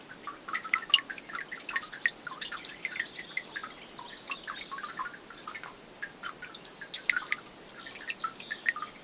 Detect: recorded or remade recorded